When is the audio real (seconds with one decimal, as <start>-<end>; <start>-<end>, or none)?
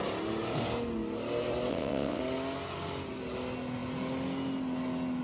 0.0-1.7; 2.2-5.2